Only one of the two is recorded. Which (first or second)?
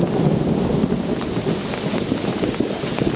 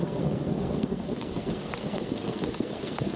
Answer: first